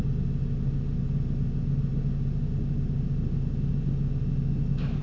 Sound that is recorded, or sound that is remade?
recorded